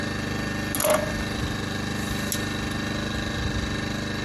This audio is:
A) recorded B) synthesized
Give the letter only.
A